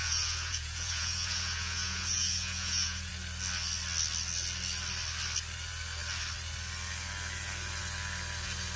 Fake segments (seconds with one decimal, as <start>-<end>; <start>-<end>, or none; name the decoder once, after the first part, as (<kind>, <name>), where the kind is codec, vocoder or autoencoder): 0.0-3.1 (vocoder, Vocos)